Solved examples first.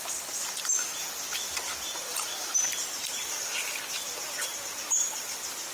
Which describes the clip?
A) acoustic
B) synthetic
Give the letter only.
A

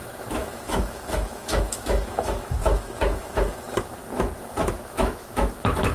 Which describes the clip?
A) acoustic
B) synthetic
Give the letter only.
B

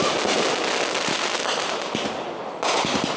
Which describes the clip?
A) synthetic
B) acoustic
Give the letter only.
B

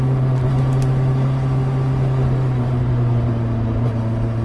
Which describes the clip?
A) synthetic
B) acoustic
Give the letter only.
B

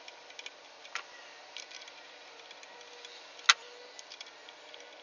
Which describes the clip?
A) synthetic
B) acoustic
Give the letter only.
B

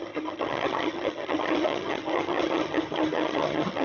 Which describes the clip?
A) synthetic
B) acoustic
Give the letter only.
A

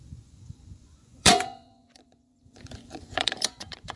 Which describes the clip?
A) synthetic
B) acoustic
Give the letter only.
A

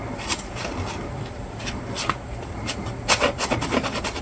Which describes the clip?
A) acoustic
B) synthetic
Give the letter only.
B